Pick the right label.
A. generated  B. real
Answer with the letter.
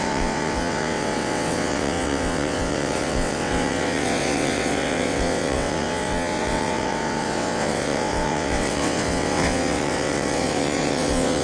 A